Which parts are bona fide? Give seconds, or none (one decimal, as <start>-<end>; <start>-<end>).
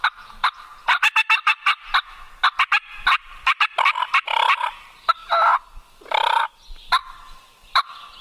0.7-3.2